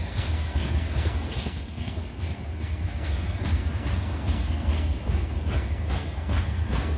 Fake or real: fake